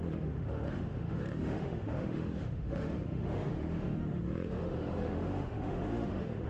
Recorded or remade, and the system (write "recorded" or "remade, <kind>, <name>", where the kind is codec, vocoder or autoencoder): remade, autoencoder, DAC-VAE